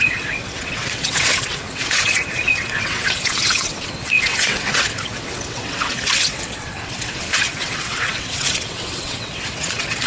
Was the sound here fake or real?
fake